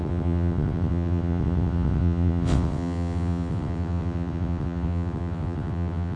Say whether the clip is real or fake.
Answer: fake